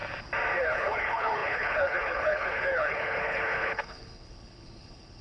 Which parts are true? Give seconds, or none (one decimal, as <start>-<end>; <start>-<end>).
0.0-0.6